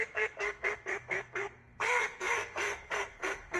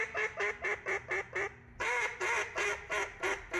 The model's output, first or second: first